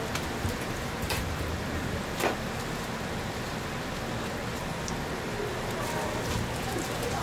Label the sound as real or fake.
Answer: real